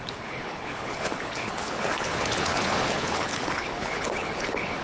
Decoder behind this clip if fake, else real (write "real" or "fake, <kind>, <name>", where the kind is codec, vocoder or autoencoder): fake, codec, HILCodec